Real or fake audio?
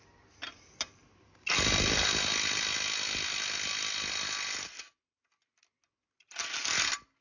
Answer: real